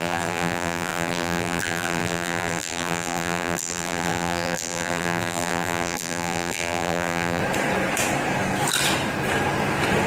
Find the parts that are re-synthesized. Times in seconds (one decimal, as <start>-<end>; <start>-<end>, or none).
0.0-7.4